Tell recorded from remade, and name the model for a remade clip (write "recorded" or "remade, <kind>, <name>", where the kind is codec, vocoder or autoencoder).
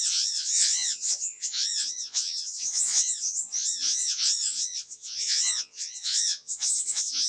remade, vocoder, Vocos